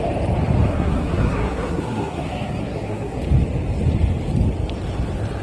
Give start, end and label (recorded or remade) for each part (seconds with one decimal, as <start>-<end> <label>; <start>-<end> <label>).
0.0-0.7 recorded; 0.7-3.2 remade; 3.2-5.4 recorded